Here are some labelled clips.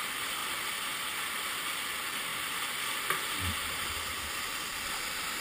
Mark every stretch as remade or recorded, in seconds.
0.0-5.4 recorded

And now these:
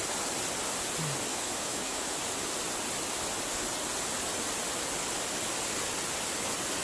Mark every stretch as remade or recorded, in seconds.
0.0-1.3 recorded; 1.3-2.0 remade; 2.0-6.8 recorded

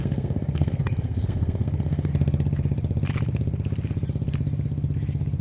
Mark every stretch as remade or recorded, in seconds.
0.0-2.1 remade; 2.1-5.4 recorded

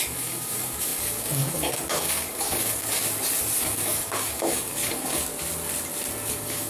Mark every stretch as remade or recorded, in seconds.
0.0-3.0 remade; 3.0-3.6 recorded; 3.6-5.3 remade; 5.3-6.3 recorded; 6.3-6.7 remade